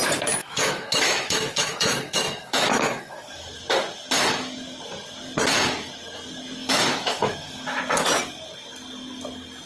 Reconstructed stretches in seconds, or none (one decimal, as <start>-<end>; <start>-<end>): 0.4-3.5; 6.6-7.8